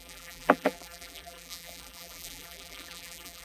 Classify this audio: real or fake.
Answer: fake